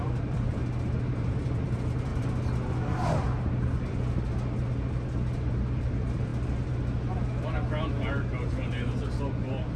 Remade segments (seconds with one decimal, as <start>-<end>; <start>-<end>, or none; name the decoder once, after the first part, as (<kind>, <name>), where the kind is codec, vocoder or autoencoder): 0.0-0.6 (vocoder, BigVGAN v2); 1.1-2.1; 5.8-6.3